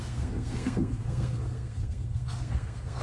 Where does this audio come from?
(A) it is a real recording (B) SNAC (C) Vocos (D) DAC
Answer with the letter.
B